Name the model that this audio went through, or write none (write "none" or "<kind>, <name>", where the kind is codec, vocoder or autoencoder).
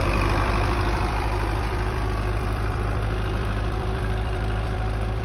vocoder, BigVGAN v2